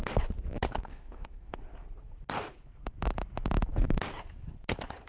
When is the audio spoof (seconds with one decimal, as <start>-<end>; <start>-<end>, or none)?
0.9-1.6